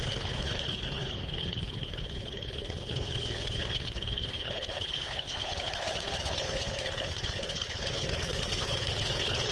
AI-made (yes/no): yes